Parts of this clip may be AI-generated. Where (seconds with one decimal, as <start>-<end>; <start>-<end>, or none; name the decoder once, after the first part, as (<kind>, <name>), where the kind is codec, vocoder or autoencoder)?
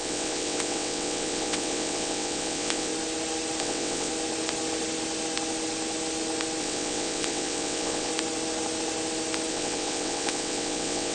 0.0-2.9 (vocoder, WaveNeXt); 3.6-4.1; 6.6-8.1; 9.5-11.1